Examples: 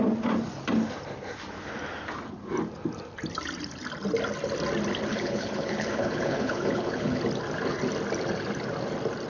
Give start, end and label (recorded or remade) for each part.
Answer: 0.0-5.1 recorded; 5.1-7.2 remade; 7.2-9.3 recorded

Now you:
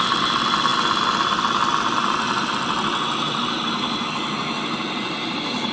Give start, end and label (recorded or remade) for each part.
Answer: 0.0-5.7 recorded

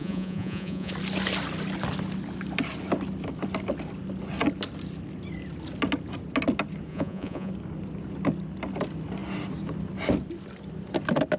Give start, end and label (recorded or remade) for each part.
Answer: 0.0-0.9 remade; 0.9-6.9 recorded; 6.9-7.5 remade; 7.5-11.4 recorded

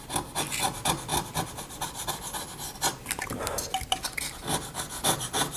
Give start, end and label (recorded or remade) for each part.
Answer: 0.0-5.6 recorded

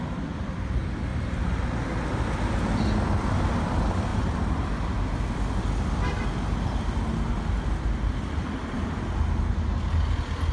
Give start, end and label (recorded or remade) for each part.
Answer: 0.0-4.1 recorded; 4.1-4.7 remade; 4.7-10.5 recorded

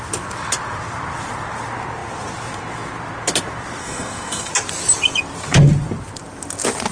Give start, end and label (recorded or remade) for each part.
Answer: 0.0-3.8 recorded; 3.8-4.5 remade; 4.5-6.9 recorded

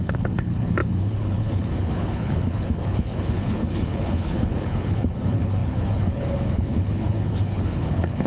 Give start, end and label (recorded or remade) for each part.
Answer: 0.0-8.3 remade

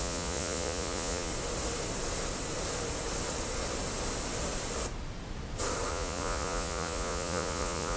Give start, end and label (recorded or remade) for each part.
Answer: 0.0-1.3 remade; 1.3-5.9 recorded; 5.9-8.0 remade